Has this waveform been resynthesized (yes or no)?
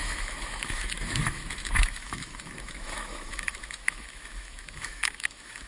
yes